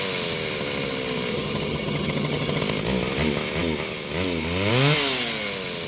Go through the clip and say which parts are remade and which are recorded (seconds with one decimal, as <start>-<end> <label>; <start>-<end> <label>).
0.0-1.3 recorded; 1.3-2.6 remade; 2.6-5.9 recorded